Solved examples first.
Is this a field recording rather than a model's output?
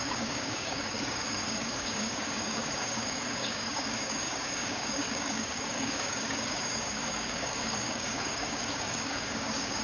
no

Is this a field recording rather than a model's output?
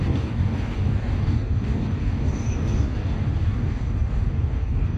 no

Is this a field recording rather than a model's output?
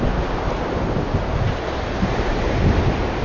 yes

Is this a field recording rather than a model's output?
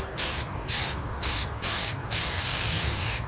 no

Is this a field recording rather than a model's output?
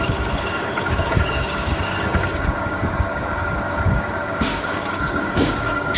no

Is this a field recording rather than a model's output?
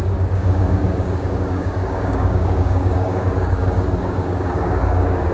no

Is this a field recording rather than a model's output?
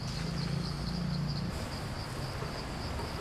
yes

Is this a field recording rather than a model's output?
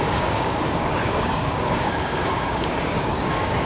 no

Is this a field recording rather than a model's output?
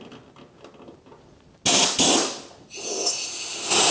yes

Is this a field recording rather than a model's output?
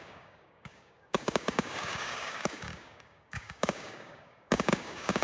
no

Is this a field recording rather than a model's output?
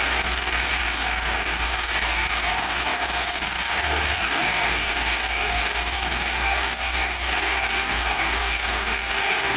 no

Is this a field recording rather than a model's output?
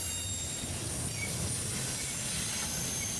yes